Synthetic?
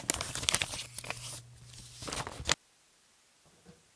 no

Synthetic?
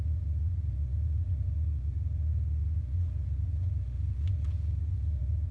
yes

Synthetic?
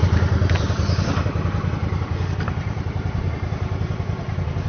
yes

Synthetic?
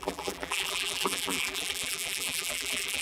yes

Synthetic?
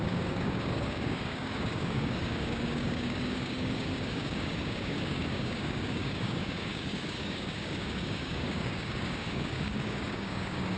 yes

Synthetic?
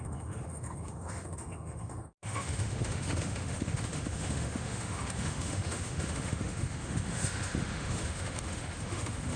yes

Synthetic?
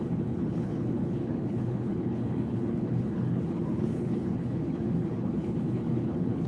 yes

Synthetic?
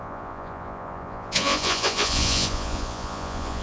yes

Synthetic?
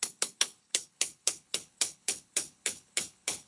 yes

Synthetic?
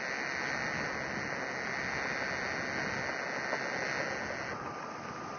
no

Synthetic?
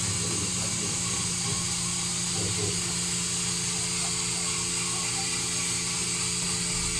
yes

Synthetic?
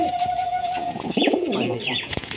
yes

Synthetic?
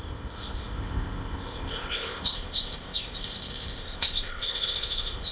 yes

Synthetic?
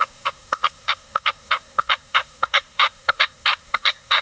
yes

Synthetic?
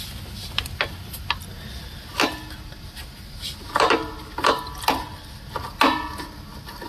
no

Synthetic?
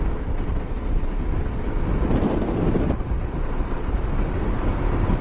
no